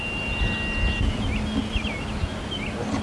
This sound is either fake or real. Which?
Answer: real